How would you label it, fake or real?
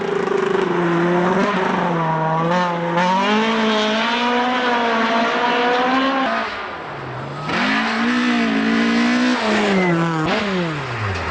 real